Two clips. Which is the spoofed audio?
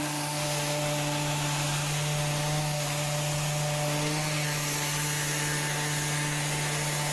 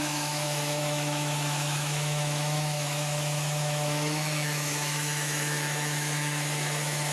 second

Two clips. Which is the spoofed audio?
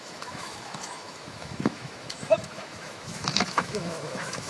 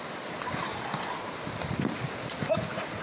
first